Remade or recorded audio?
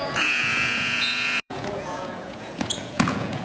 remade